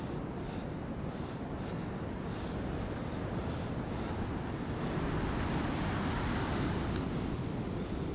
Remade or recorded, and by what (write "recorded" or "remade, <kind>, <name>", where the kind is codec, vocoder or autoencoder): recorded